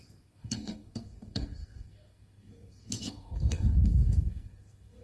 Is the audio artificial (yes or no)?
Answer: yes